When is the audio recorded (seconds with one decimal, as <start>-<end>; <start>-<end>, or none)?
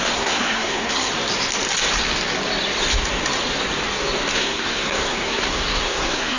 1.1-4.3